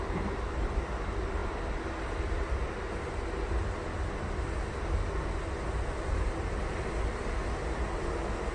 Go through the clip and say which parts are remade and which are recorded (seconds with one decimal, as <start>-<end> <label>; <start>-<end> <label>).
0.0-8.5 recorded